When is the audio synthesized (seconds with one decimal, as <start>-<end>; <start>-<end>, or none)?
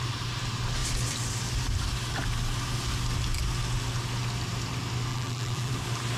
5.1-5.7